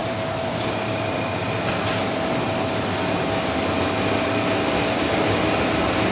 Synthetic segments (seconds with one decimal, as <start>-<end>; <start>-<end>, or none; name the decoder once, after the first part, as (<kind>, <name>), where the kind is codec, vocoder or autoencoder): 0.0-1.8 (vocoder, BigVGAN v2)